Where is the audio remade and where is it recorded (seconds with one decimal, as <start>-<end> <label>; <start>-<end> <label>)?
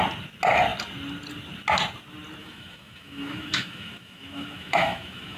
0.0-2.4 recorded; 2.4-5.4 remade